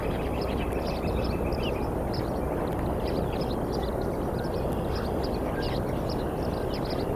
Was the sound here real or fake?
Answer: real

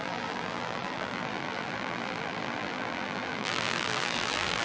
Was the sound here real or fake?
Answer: fake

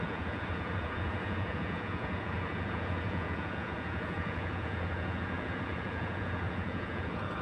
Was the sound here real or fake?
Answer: fake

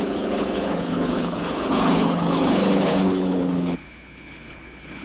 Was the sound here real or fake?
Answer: fake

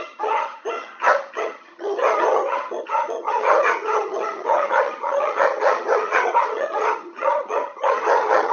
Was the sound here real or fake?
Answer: fake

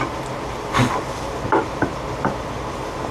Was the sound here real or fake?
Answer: real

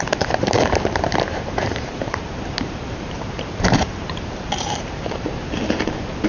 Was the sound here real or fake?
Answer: fake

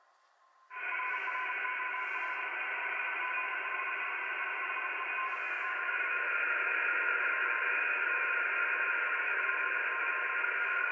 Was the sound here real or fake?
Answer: real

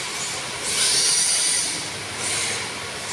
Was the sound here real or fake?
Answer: real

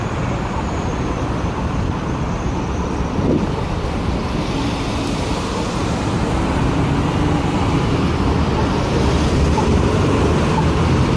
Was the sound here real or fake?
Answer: fake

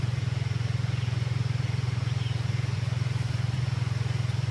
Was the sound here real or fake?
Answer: fake